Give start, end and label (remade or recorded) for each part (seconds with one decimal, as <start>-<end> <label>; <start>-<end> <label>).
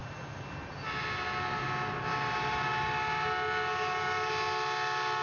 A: 0.0-5.2 recorded